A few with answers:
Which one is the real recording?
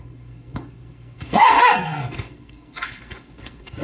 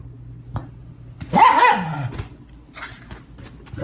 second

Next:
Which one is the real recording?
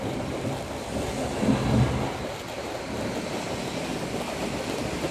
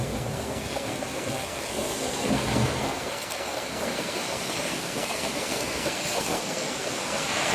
first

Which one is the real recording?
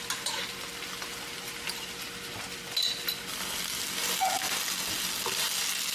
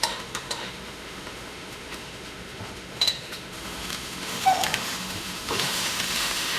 first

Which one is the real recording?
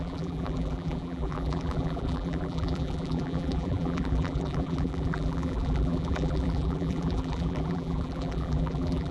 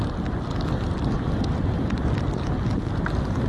second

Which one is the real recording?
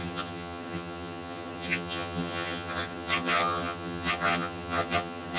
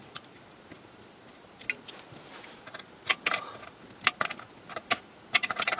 second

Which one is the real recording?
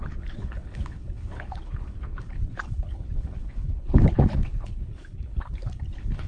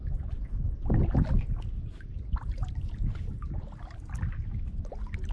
second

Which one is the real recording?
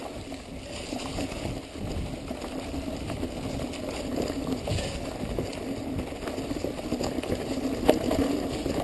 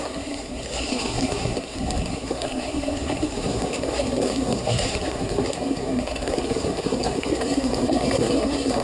first